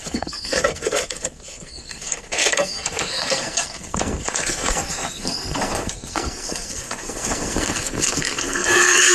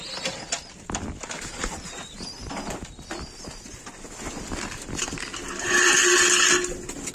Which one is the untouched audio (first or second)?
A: second